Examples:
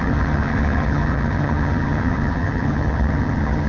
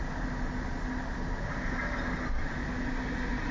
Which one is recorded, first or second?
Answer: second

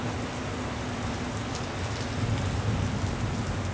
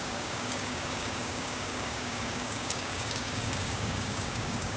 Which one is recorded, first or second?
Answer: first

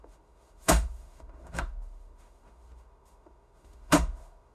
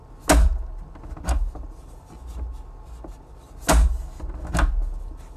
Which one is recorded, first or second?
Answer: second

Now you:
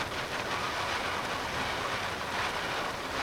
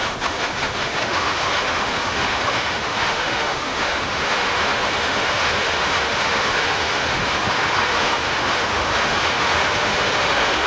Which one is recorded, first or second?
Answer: first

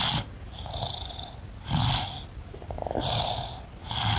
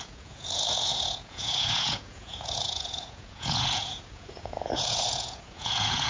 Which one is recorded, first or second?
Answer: first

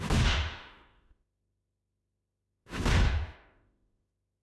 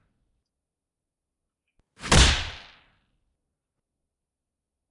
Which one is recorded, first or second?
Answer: second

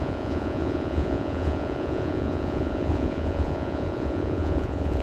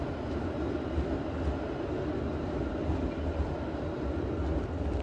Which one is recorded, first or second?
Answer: second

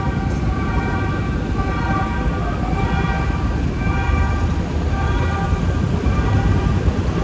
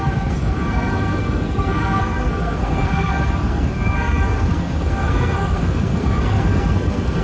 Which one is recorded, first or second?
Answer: first